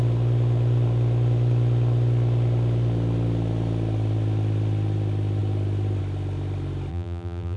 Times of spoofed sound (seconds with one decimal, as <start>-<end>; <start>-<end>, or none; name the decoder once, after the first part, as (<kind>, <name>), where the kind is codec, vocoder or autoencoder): 6.9-7.6 (vocoder, BigVGAN v2)